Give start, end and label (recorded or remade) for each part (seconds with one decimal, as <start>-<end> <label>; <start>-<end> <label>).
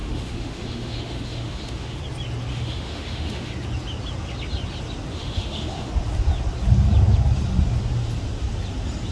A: 0.0-2.0 remade; 2.0-2.5 recorded; 2.5-3.5 remade; 3.5-5.1 recorded; 5.1-5.9 remade; 5.9-9.1 recorded